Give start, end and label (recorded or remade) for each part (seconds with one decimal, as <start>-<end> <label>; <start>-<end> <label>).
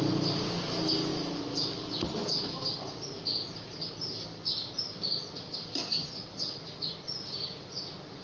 0.0-8.2 recorded